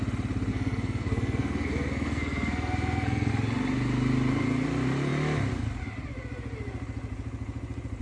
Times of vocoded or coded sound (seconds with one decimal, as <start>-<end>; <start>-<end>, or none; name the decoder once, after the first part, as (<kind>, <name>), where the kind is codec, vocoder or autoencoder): 0.5-3.3 (codec, SNAC)